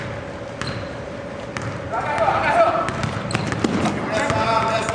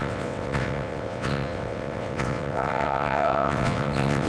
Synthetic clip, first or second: second